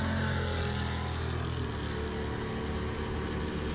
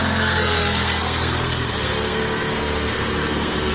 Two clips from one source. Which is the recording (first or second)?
first